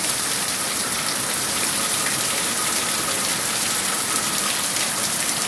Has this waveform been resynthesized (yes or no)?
yes